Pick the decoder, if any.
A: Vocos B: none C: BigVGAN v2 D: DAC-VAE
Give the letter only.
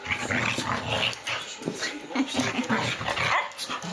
B